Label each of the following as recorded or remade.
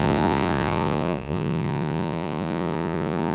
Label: remade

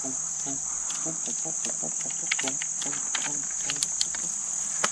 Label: recorded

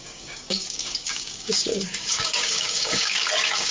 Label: remade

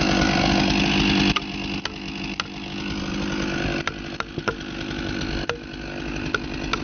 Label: recorded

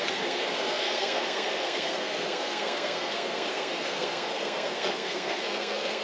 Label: remade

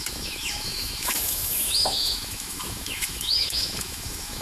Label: remade